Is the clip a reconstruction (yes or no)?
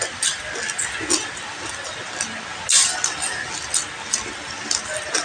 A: no